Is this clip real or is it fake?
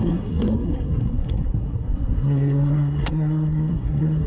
fake